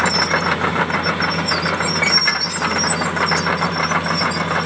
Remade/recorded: recorded